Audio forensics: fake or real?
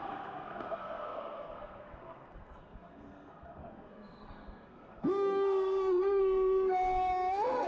fake